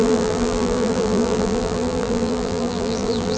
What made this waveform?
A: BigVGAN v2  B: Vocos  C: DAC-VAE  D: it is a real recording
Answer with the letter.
A